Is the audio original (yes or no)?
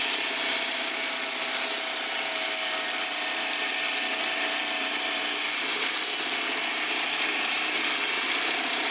yes